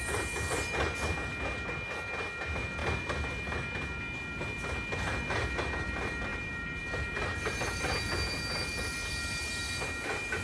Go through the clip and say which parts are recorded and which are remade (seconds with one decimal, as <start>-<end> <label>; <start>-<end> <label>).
0.0-6.3 recorded; 6.3-6.8 remade; 6.8-10.4 recorded